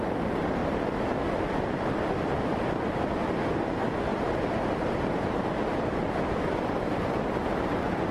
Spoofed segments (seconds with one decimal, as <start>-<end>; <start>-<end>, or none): 4.1-7.4